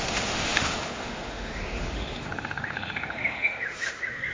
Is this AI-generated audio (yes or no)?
yes